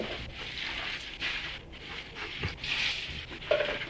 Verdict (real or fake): real